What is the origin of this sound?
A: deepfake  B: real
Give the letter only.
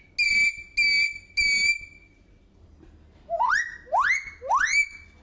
B